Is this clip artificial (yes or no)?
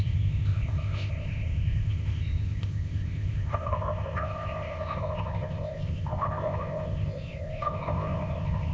yes